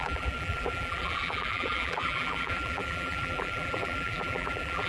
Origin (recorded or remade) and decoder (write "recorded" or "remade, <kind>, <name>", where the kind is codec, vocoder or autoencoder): remade, vocoder, BigVGAN v2